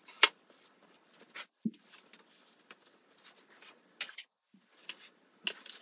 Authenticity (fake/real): real